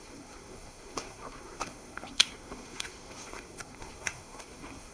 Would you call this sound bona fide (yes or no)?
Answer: no